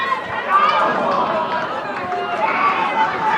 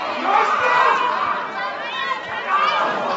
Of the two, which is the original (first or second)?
second